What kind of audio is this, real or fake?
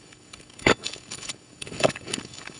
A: fake